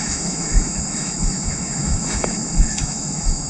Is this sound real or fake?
fake